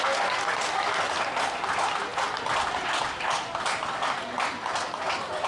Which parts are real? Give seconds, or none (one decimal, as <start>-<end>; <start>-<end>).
0.0-5.5